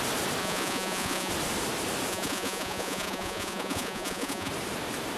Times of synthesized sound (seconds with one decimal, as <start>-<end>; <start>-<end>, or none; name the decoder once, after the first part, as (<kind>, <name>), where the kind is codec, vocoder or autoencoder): 0.4-1.3 (vocoder, Vocos); 2.1-4.5